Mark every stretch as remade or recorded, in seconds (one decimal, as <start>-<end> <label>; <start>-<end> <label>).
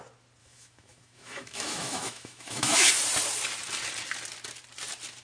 0.0-0.4 recorded; 0.4-2.9 remade; 2.9-5.2 recorded